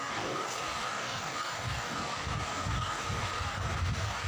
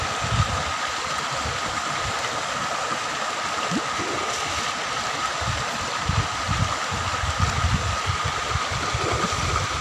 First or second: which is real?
second